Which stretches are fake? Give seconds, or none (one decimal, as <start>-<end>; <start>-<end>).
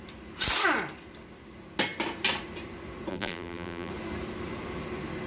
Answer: 3.1-3.9